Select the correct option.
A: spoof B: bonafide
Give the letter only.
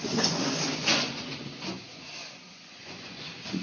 A